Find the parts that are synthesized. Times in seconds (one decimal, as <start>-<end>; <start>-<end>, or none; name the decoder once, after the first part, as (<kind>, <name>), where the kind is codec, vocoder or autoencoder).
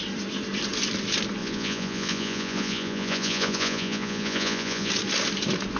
1.4-4.9 (vocoder, Vocos)